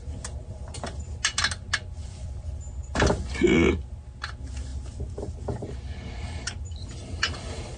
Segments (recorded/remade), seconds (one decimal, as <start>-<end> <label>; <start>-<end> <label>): 0.0-7.8 recorded